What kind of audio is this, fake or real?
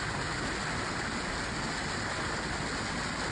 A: real